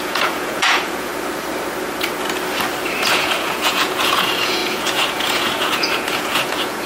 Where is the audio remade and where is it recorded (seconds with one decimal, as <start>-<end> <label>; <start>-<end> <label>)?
0.0-1.1 remade; 1.1-3.1 recorded; 3.1-6.9 remade